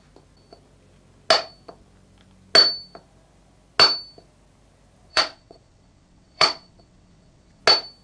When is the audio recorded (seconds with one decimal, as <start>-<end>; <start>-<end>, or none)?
0.0-5.1; 7.6-8.0